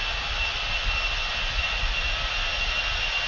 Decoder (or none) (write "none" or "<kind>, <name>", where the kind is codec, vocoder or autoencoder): none